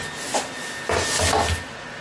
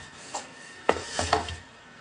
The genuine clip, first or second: first